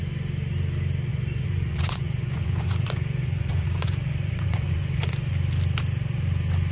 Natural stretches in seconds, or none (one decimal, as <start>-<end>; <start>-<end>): 0.0-1.1; 5.1-6.7